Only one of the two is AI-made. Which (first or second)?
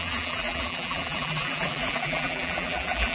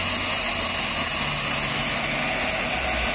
first